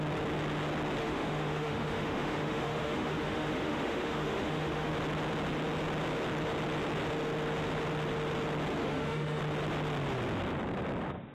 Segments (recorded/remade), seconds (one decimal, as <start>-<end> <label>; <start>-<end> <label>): 0.0-1.0 recorded; 1.0-4.9 remade; 4.9-8.8 recorded; 8.8-9.4 remade; 9.4-11.3 recorded